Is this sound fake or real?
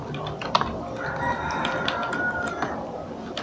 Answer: real